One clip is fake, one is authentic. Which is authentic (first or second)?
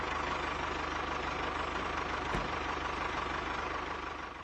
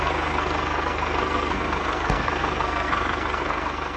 first